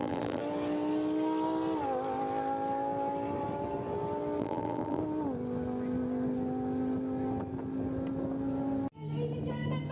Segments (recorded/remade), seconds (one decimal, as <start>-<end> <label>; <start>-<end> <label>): 0.0-0.4 remade; 0.4-4.4 recorded; 4.4-5.0 remade; 5.0-9.9 recorded